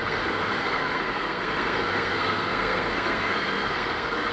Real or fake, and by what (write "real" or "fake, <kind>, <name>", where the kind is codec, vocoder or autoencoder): fake, codec, SNAC